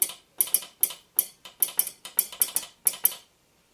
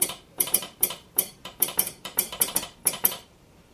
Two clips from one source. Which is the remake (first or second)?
second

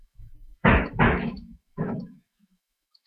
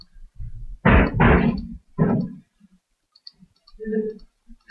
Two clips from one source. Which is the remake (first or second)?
first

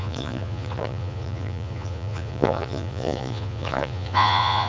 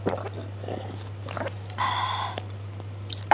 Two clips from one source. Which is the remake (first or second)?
first